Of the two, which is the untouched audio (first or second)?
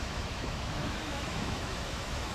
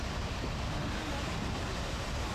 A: second